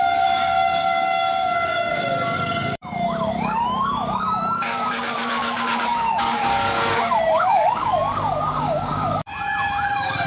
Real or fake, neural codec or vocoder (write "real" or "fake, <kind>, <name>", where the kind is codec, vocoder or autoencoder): fake, codec, DAC